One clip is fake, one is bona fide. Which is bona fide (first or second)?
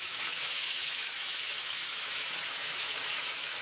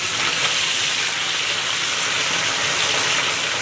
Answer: second